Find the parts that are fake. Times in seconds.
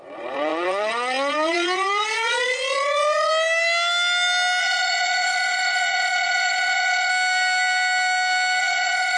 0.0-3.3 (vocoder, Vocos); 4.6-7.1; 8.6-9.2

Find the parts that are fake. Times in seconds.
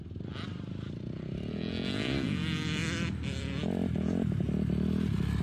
none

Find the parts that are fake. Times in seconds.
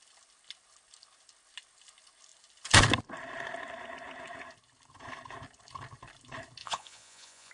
6.6-7.5 (vocoder, Vocos)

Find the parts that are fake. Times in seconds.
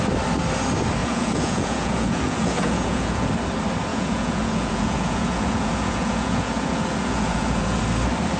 1.0-3.3 (vocoder, Vocos); 3.9-7.8